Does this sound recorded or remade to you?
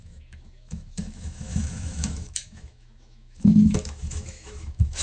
remade